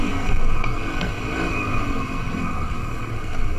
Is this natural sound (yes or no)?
no